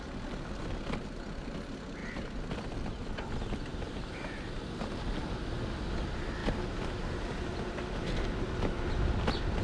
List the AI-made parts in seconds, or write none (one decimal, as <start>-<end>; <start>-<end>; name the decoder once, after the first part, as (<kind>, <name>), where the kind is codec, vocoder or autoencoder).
none